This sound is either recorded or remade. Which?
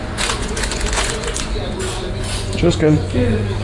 remade